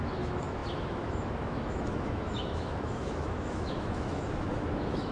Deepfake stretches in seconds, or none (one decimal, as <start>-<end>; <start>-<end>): 0.0-5.1